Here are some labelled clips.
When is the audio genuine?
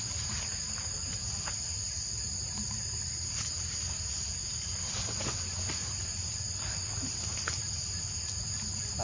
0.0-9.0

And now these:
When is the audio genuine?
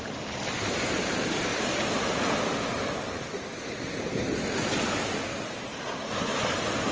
0.0-6.9